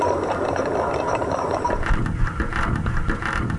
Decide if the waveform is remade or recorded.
recorded